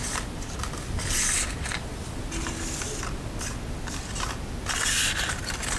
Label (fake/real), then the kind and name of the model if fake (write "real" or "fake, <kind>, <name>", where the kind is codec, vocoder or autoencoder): real